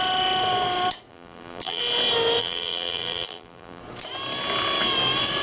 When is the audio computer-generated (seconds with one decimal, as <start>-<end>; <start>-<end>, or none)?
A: 1.1-1.8; 2.4-3.8